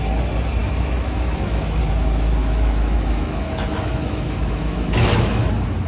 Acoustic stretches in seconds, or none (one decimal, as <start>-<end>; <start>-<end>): 0.0-0.6; 1.8-2.4; 5.5-5.9